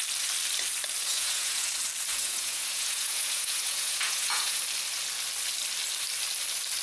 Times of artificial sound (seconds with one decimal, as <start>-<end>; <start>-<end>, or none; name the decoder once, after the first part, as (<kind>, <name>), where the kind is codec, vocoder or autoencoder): 1.1-1.7 (vocoder, Vocos); 2.1-4.6